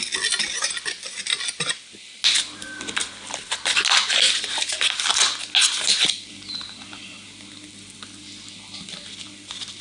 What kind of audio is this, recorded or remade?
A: recorded